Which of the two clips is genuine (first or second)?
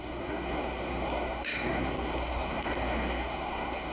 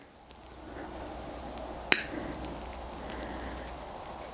second